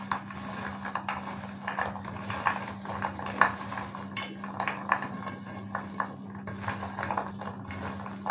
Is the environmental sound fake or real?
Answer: real